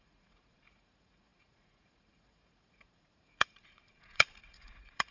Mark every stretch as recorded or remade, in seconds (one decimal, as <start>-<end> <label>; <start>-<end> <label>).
0.0-5.1 remade